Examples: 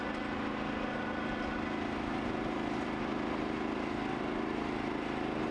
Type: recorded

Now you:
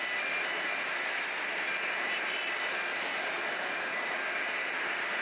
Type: recorded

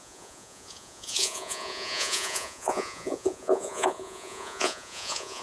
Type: remade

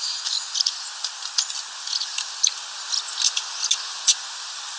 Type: recorded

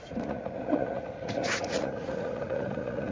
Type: remade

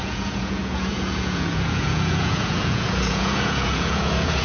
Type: remade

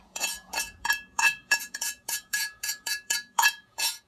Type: remade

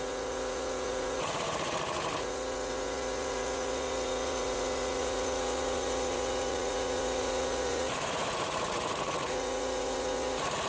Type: remade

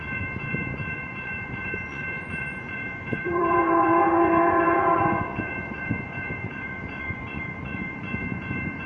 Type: remade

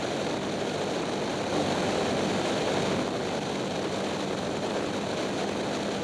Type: recorded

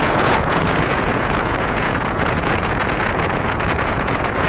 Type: remade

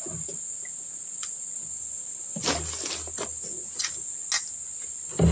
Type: recorded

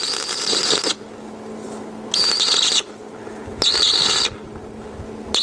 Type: recorded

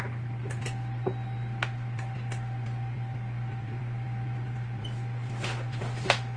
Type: recorded